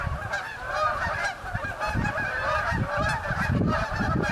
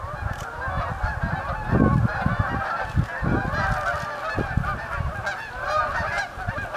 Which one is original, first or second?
second